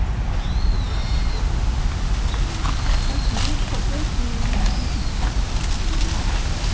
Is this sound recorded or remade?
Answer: recorded